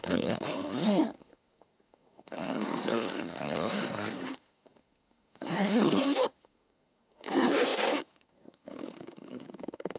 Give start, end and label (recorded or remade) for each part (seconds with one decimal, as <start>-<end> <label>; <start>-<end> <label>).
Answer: 0.0-10.0 remade